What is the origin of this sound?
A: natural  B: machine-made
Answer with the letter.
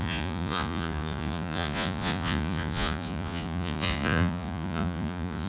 B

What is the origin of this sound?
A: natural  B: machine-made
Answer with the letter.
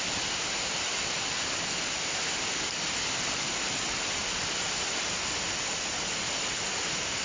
A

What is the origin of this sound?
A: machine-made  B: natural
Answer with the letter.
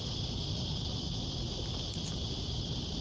B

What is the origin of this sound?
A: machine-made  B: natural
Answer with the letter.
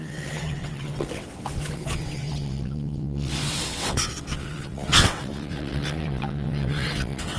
A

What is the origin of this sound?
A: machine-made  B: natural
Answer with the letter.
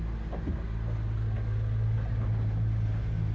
B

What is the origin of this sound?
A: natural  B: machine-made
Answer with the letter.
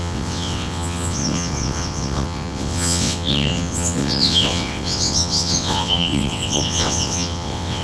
B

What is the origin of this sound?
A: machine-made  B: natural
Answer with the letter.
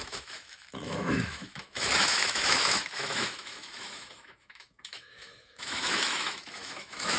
A